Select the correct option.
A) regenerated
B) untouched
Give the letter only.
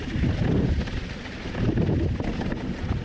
B